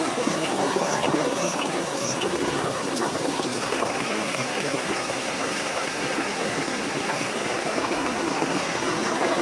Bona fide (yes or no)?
no